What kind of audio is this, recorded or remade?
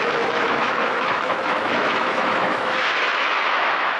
remade